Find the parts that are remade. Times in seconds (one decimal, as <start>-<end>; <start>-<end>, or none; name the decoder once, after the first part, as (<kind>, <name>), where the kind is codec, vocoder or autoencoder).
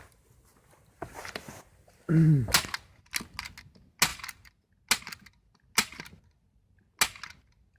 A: none